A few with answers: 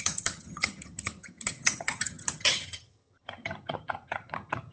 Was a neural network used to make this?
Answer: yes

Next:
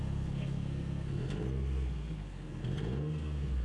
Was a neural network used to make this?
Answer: yes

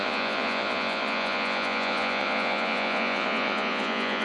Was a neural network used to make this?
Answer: yes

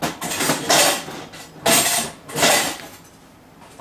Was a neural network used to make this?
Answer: no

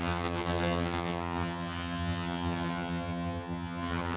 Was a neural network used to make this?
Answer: yes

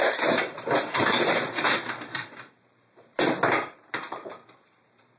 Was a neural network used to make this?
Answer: yes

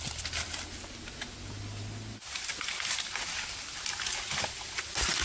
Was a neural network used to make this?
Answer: no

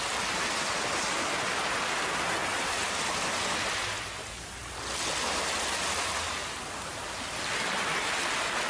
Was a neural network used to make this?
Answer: no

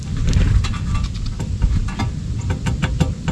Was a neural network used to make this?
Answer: no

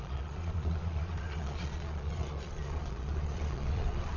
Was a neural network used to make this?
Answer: yes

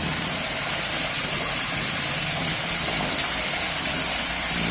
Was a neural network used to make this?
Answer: no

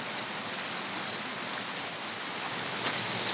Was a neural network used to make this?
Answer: no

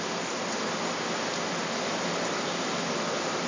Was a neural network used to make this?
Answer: no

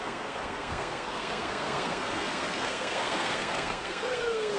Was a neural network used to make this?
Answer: yes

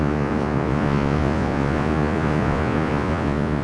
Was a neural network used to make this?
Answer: yes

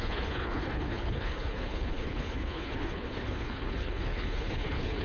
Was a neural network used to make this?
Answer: yes